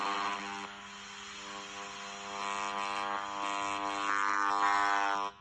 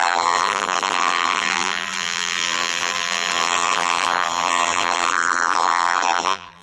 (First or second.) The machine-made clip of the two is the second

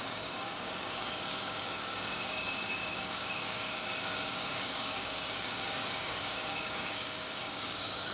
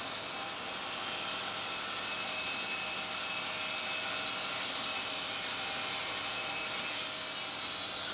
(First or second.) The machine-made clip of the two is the first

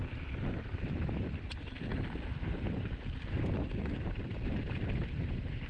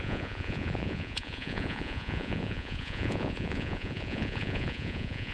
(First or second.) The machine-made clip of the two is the second